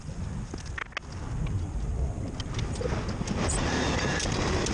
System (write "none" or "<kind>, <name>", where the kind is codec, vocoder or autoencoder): none